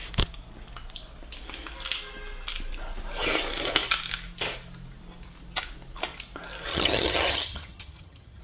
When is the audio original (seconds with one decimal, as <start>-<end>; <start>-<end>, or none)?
0.0-6.7